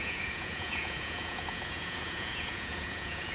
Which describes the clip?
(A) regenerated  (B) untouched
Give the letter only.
A